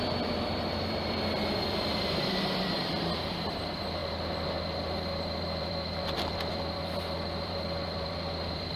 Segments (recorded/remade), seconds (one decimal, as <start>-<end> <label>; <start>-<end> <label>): 0.0-8.8 remade